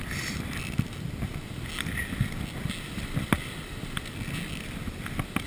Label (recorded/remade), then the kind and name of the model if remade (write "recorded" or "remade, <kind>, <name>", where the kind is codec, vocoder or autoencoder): recorded